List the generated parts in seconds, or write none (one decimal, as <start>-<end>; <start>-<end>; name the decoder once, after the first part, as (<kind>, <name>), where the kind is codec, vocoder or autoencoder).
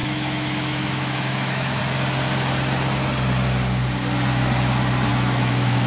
0.0-1.8 (autoencoder, DAC-VAE); 5.1-5.9